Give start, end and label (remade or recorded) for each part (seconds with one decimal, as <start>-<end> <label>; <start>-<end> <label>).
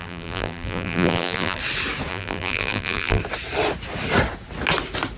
0.0-1.6 remade; 1.6-2.1 recorded; 2.1-3.2 remade; 3.2-5.2 recorded